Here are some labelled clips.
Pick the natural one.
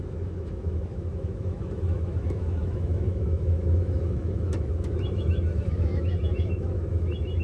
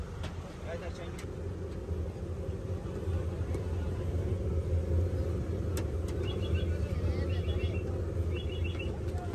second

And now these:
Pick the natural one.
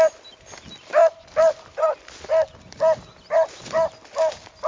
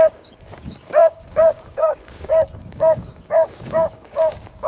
first